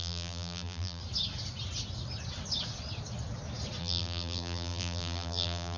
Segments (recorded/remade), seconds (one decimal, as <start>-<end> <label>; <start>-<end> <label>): 0.0-1.0 remade; 1.0-3.8 recorded; 3.8-5.8 remade